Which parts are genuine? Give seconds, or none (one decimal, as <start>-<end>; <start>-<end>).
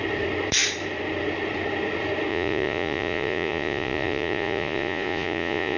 0.0-2.3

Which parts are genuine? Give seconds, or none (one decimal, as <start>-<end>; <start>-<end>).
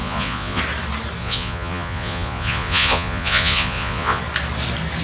0.6-1.2; 4.2-5.0